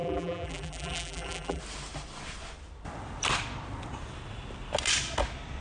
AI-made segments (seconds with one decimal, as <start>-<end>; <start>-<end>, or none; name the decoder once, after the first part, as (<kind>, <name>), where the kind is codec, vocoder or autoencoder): 0.0-1.6 (vocoder, BigVGAN v2)